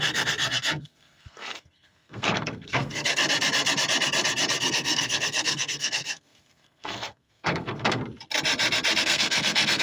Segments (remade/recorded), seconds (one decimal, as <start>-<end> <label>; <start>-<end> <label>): 0.0-3.2 remade; 3.2-4.6 recorded; 4.6-8.0 remade; 8.0-9.0 recorded; 9.0-9.8 remade

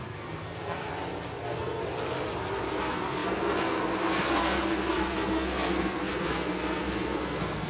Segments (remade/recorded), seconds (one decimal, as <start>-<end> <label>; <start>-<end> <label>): 0.0-0.9 remade; 0.9-1.4 recorded; 1.4-1.8 remade; 1.8-2.8 recorded; 2.8-7.7 remade

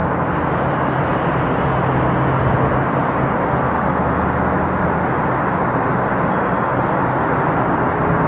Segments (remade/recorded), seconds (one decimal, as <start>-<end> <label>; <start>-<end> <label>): 0.0-8.3 recorded

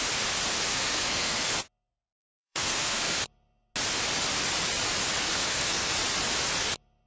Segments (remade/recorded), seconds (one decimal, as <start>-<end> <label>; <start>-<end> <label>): 0.0-0.7 recorded; 0.7-1.5 remade; 1.5-1.9 recorded; 1.9-3.2 remade; 3.2-5.2 recorded; 5.2-5.9 remade; 5.9-7.1 recorded

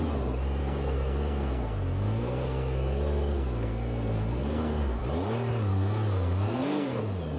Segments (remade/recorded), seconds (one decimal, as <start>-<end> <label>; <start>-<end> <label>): 0.0-0.6 recorded; 0.6-5.0 remade; 5.0-5.7 recorded; 5.7-7.0 remade; 7.0-7.4 recorded

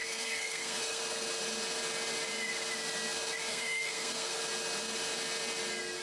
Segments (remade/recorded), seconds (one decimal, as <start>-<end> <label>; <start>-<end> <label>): 0.0-1.0 remade; 1.0-3.5 recorded; 3.5-4.4 remade; 4.4-6.0 recorded

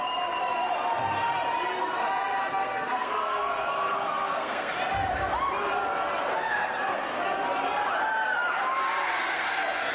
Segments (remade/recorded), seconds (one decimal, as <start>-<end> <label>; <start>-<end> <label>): 0.0-2.5 recorded; 2.5-4.7 remade; 4.7-6.3 recorded; 6.3-7.2 remade; 7.2-9.0 recorded; 9.0-9.9 remade

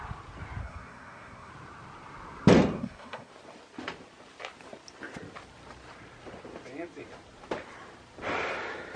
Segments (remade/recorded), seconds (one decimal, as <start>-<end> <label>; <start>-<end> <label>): 0.0-0.6 recorded; 0.6-1.5 remade; 1.5-2.8 recorded; 2.8-3.3 remade; 3.3-9.0 recorded